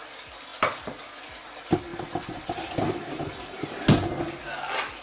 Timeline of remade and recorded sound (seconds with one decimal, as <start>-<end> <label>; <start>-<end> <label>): 0.0-5.0 recorded